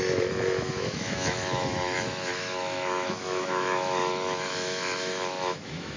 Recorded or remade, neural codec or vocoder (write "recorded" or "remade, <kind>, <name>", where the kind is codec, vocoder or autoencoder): remade, autoencoder, DAC-VAE